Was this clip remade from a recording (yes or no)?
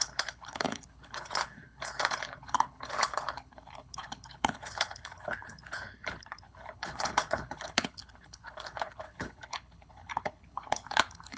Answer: yes